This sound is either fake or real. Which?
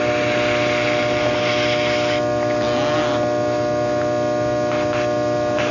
real